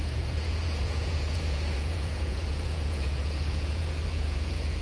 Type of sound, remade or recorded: remade